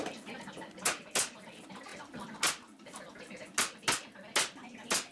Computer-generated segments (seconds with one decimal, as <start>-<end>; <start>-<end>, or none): none